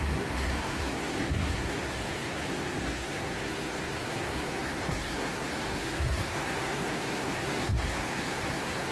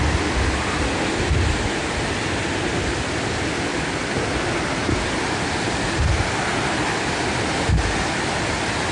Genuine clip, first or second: second